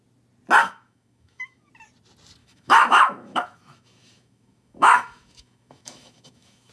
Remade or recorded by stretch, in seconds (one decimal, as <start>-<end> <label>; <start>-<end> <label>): 0.0-0.6 recorded; 0.6-1.7 remade; 1.7-2.4 recorded; 2.4-6.7 remade